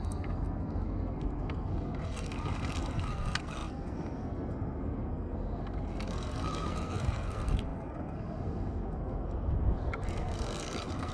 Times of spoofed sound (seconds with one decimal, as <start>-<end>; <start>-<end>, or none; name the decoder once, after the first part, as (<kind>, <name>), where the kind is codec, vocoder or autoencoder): 0.0-11.1 (codec, SNAC)